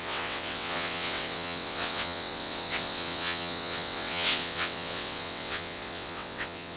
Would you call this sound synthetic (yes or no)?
yes